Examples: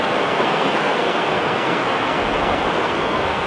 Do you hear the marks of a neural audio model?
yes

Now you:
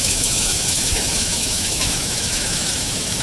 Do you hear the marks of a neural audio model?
yes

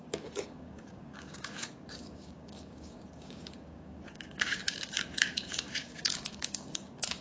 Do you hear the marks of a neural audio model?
yes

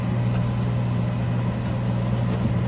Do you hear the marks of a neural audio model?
no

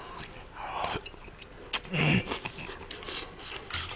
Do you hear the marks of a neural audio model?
no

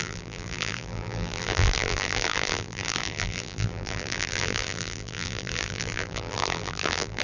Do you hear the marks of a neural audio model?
yes